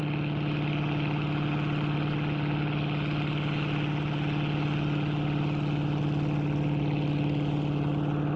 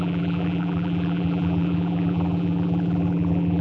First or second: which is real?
first